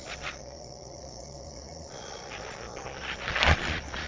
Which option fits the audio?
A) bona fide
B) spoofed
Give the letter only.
B